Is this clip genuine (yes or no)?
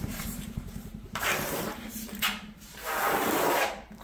no